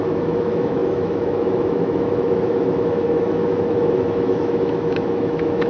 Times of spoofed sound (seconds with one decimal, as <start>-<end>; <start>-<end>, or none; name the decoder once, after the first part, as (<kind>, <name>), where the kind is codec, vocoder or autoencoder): 0.0-5.7 (autoencoder, DAC-VAE)